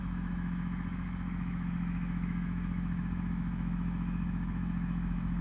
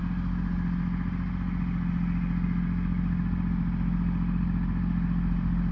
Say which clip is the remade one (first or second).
first